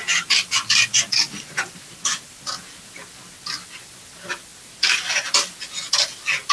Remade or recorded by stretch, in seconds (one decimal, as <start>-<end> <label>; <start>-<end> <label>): 0.0-6.5 recorded